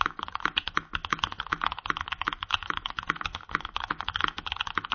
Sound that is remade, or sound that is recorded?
remade